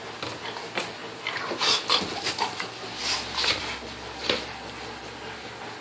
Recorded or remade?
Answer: recorded